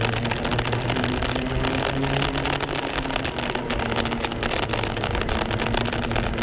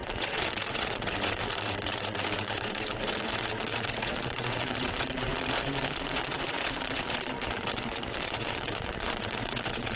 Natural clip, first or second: first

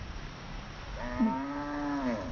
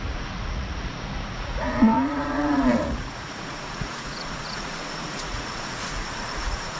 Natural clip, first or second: first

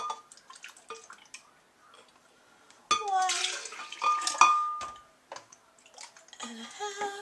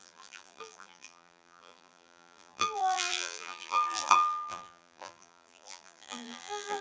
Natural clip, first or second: first